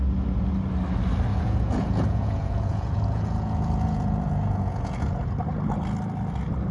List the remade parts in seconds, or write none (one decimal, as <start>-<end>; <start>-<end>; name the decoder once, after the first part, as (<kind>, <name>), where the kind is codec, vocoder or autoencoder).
1.3-5.3 (vocoder, Vocos)